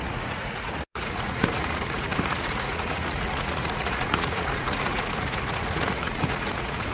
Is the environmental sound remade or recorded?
remade